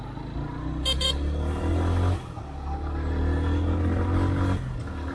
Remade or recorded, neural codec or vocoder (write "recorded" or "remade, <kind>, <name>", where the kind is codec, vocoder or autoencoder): recorded